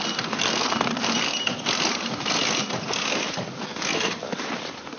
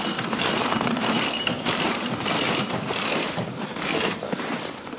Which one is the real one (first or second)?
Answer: first